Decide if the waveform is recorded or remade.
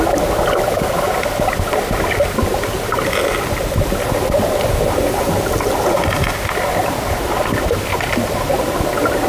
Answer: recorded